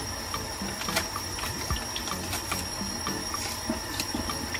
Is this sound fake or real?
real